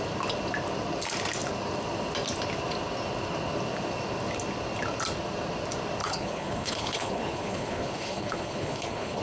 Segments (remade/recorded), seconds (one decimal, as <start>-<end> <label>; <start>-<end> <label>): 0.0-6.0 recorded; 6.0-9.2 remade